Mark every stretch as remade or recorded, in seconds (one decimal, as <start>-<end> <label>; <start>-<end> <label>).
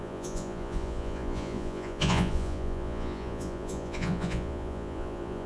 0.0-5.5 remade